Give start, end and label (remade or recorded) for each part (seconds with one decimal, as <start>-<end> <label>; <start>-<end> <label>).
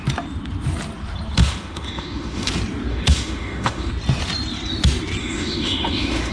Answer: 0.0-1.4 recorded; 1.4-2.5 remade; 2.5-2.9 recorded; 2.9-3.9 remade; 3.9-5.2 recorded; 5.2-6.3 remade